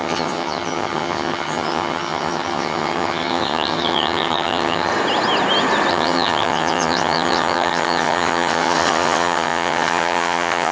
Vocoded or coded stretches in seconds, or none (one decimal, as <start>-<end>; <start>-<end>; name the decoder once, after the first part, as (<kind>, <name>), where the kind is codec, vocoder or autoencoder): 0.0-4.9 (vocoder, HiFi-GAN); 5.9-10.7